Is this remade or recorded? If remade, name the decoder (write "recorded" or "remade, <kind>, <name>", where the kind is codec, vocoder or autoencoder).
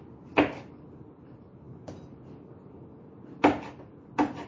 recorded